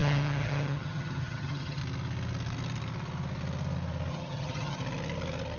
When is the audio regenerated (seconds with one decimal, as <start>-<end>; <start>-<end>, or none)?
0.0-1.8; 4.1-4.8